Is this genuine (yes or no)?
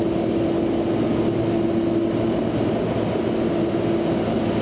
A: yes